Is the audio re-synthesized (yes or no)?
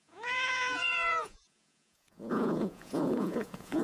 yes